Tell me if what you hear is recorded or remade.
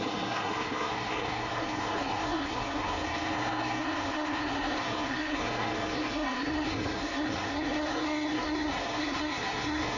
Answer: remade